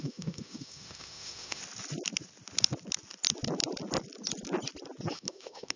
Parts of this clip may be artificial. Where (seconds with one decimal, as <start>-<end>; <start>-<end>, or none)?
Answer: 0.0-1.6; 5.1-5.8